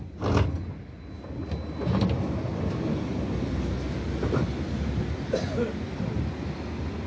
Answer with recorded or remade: recorded